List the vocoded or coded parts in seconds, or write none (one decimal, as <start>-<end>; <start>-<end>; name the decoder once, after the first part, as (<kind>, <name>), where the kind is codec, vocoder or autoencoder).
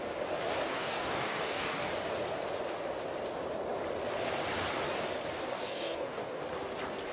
0.7-1.9 (codec, DAC); 5.5-6.4